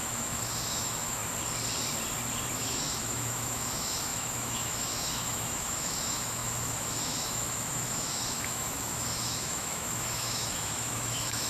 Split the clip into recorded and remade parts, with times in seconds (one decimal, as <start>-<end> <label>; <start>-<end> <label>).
0.0-1.2 remade; 1.2-2.5 recorded; 2.5-11.5 remade